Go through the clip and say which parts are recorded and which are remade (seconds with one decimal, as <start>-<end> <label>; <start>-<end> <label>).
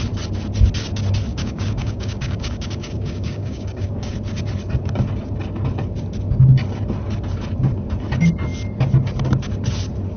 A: 0.0-1.3 recorded; 1.3-4.1 remade; 4.1-10.2 recorded